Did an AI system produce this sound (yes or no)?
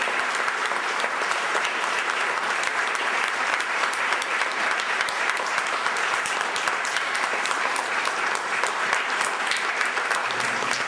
yes